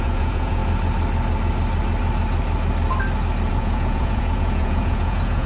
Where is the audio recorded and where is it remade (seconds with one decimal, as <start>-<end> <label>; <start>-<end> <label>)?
0.0-0.6 remade; 0.6-3.5 recorded; 3.5-5.5 remade